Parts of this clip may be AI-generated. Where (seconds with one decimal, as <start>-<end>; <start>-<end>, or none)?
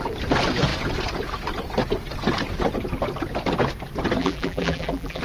4.2-5.2